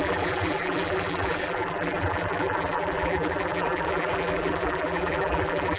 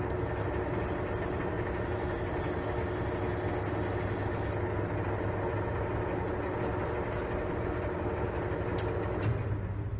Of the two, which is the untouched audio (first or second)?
second